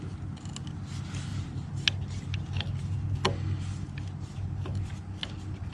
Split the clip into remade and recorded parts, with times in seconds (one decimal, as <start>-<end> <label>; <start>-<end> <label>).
0.0-5.7 recorded